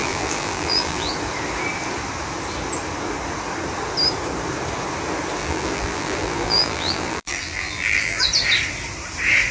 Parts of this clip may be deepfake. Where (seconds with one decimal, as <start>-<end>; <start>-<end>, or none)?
0.0-1.1; 5.4-8.2